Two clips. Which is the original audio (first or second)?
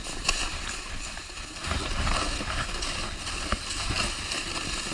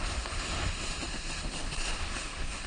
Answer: first